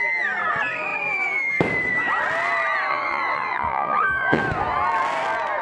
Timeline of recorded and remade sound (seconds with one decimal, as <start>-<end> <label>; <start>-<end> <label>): 0.0-2.9 recorded; 2.9-4.4 remade; 4.4-5.6 recorded